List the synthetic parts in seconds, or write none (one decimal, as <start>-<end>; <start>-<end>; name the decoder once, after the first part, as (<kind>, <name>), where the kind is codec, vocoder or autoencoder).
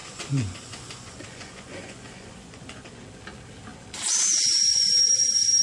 0.0-3.0 (vocoder, Vocos)